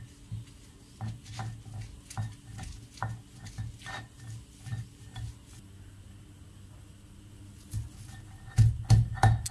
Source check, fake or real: real